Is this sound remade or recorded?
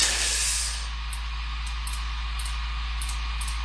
recorded